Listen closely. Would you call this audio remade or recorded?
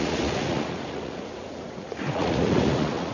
remade